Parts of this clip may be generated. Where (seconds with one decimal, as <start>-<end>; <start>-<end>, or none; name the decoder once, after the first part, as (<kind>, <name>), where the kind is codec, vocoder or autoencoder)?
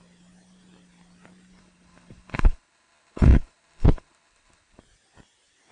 1.6-4.8 (codec, HILCodec)